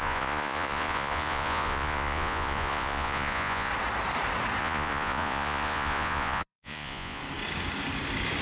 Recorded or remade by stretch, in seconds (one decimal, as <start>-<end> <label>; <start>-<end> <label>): 0.0-3.7 remade; 3.7-4.6 recorded; 4.6-7.2 remade; 7.2-8.4 recorded